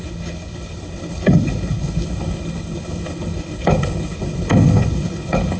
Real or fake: fake